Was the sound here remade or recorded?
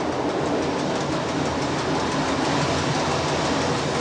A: recorded